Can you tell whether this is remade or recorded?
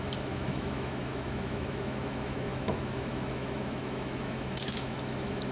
remade